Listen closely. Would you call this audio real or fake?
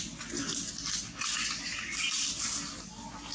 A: real